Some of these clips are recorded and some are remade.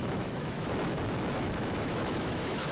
remade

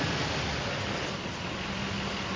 recorded